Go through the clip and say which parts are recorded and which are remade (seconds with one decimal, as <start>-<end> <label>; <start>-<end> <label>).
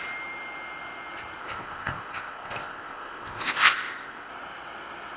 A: 0.0-1.4 recorded; 1.4-4.3 remade; 4.3-5.2 recorded